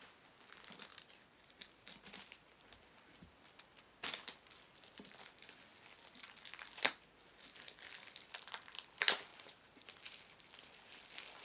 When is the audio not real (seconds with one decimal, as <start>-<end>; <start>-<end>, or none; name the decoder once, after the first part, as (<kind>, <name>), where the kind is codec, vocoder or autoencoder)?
0.9-3.4 (vocoder, BigVGAN v2); 9.3-10.2